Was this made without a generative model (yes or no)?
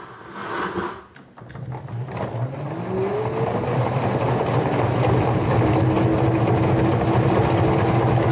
yes